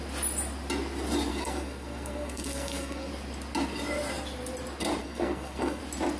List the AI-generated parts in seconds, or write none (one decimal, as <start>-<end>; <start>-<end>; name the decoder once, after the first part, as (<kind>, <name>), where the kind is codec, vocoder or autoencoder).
1.3-3.1 (codec, SNAC); 5.0-5.8